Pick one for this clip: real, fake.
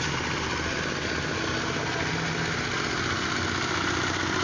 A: real